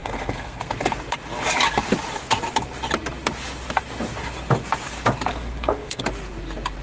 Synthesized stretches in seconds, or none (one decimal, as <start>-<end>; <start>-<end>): 0.0-0.7; 5.3-6.0